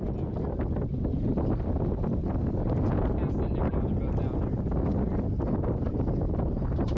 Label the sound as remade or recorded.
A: recorded